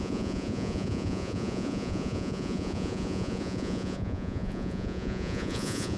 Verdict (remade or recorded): remade